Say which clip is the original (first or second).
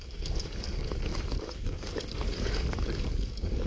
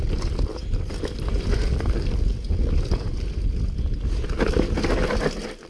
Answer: second